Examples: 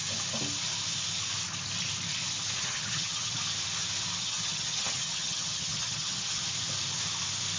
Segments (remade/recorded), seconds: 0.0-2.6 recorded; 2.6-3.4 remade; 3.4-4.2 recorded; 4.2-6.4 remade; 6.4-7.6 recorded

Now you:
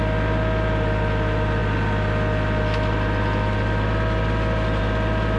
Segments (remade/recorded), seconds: 0.0-5.4 recorded